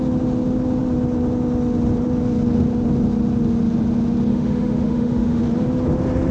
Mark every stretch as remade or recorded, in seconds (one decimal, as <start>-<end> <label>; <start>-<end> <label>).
0.0-4.3 recorded; 4.3-5.4 remade; 5.4-6.3 recorded